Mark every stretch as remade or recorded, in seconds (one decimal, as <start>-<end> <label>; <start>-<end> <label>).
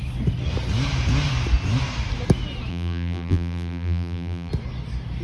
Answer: 0.0-2.7 recorded; 2.7-4.5 remade; 4.5-5.2 recorded